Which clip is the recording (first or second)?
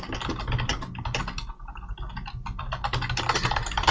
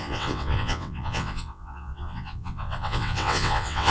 first